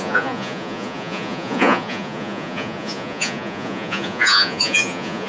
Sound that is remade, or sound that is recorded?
remade